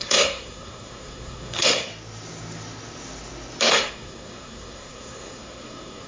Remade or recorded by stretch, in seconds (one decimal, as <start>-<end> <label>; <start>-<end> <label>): 0.0-1.9 remade; 1.9-3.7 recorded; 3.7-6.1 remade